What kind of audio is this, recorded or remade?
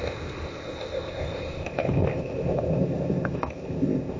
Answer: remade